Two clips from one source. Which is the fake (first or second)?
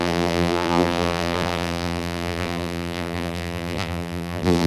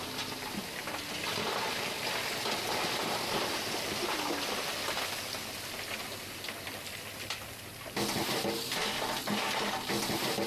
first